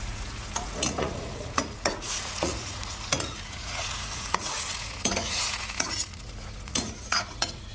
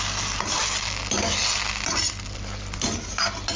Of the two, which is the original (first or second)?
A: second